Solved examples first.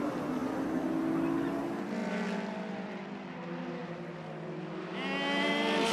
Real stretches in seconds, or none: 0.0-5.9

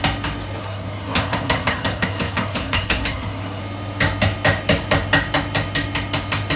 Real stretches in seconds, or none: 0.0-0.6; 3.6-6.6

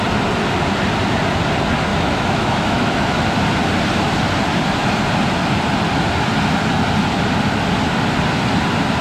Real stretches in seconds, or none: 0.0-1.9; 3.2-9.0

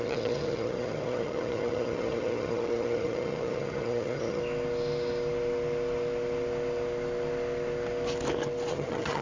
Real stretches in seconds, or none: 4.4-8.7

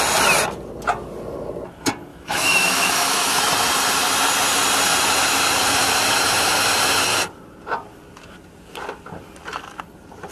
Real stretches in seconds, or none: 0.0-2.1; 3.4-10.3